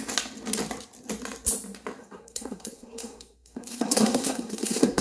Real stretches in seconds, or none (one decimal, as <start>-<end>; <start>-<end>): 0.0-2.0